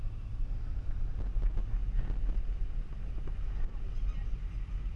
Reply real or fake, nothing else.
real